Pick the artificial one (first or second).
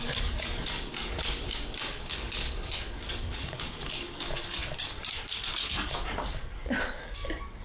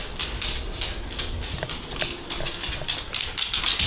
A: first